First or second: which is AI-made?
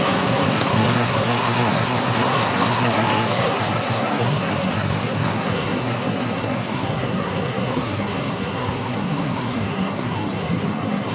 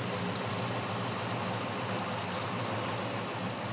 first